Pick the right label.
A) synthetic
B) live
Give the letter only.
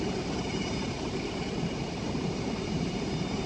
B